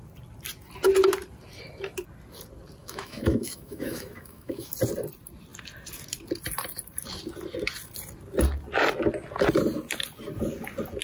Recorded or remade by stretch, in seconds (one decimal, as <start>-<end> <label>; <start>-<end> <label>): 0.0-2.8 recorded; 2.8-4.7 remade; 4.7-11.0 recorded